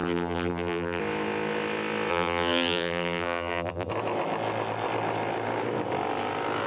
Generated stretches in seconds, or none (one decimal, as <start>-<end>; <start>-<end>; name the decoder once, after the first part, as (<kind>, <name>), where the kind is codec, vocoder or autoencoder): 0.0-1.0 (vocoder, BigVGAN v2); 2.1-3.9